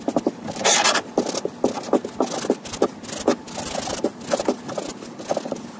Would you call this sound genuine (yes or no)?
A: yes